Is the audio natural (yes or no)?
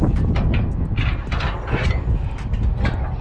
yes